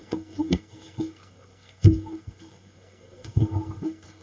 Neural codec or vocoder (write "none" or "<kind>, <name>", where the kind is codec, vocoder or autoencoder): codec, SNAC